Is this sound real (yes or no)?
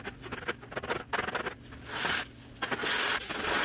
yes